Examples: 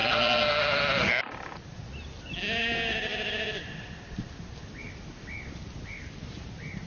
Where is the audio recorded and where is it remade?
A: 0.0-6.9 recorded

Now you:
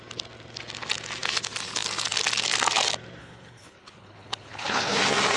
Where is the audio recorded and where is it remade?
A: 0.0-3.2 recorded; 3.2-5.0 remade; 5.0-5.4 recorded

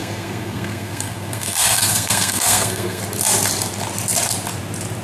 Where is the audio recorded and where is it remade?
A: 0.0-3.0 remade; 3.0-5.0 recorded

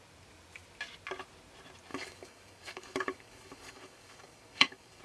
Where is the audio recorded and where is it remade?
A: 0.0-1.9 recorded; 1.9-5.0 remade

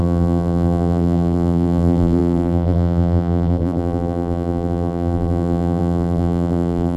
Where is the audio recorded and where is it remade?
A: 0.0-7.0 remade